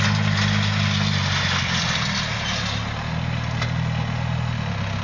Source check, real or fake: real